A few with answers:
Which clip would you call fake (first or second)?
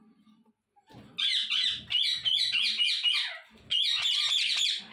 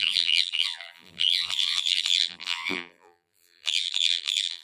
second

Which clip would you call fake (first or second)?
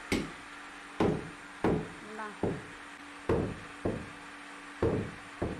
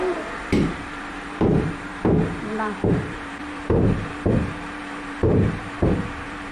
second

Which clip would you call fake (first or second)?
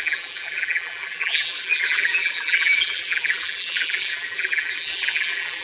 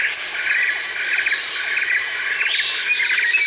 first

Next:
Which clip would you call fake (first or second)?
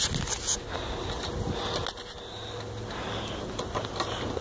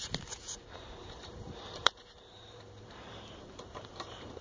second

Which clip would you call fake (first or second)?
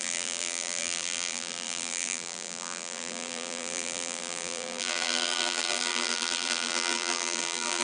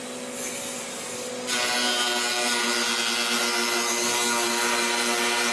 first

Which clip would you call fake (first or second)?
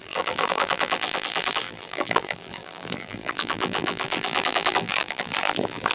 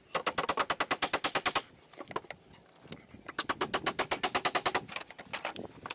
first